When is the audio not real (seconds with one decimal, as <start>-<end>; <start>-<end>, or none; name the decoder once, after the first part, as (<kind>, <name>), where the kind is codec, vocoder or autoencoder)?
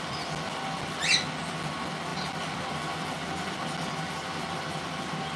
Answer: none